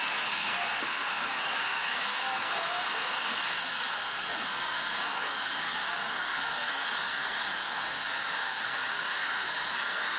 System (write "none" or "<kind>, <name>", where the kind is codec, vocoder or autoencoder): codec, SNAC